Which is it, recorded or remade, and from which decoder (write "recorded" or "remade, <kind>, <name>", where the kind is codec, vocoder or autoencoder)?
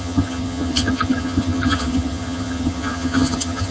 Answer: remade, vocoder, HiFi-GAN